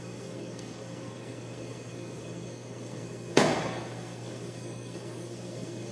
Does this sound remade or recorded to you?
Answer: remade